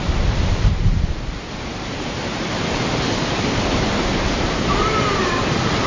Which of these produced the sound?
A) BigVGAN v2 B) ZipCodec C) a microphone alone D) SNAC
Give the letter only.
A